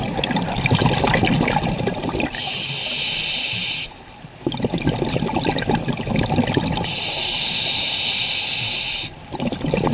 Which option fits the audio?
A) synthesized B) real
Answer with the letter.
B